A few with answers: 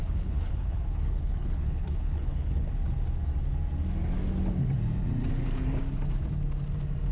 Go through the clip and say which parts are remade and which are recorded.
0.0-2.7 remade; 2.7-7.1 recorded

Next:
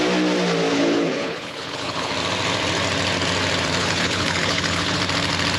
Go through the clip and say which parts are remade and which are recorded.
0.0-0.7 recorded; 0.7-2.1 remade; 2.1-3.8 recorded; 3.8-5.0 remade; 5.0-5.6 recorded

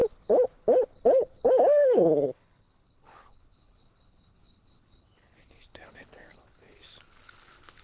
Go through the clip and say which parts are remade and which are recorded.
0.0-7.8 remade

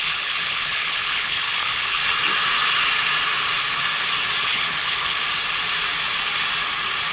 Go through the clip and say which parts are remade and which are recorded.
0.0-2.0 remade; 2.0-4.4 recorded; 4.4-5.2 remade; 5.2-7.1 recorded

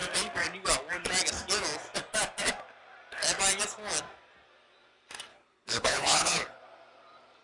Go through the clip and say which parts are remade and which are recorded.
0.0-5.3 recorded; 5.3-6.6 remade; 6.6-7.4 recorded

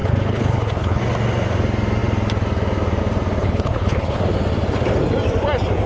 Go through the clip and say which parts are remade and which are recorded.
0.0-1.0 remade; 1.0-3.4 recorded; 3.4-4.2 remade; 4.2-5.9 recorded

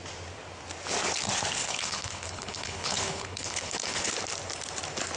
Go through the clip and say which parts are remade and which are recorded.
0.0-1.6 recorded; 1.6-4.1 remade; 4.1-5.2 recorded